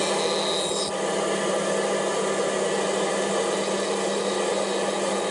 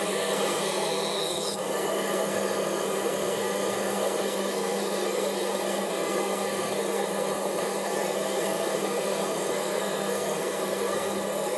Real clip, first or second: first